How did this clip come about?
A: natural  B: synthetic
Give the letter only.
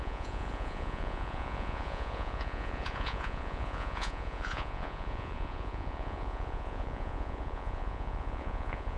B